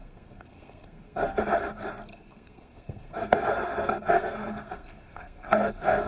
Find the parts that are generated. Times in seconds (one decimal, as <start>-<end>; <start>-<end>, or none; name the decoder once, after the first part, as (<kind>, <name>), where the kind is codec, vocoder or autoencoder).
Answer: 0.0-1.4 (codec, SNAC); 2.1-6.1